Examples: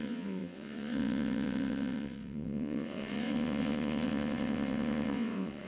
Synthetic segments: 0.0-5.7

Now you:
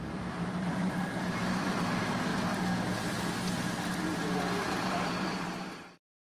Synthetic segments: 0.0-2.3; 4.6-6.2

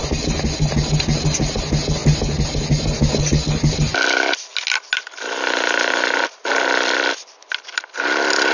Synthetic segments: none